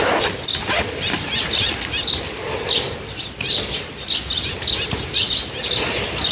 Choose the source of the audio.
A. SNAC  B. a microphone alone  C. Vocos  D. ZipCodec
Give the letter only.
B